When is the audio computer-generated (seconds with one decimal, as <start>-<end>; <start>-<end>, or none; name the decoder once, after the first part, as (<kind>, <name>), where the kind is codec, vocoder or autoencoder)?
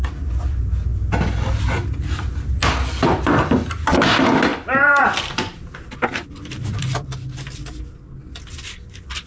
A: 4.5-7.8 (vocoder, BigVGAN v2)